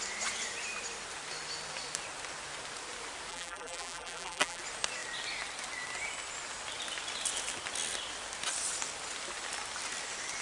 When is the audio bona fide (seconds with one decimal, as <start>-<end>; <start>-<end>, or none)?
0.0-3.3; 4.6-10.4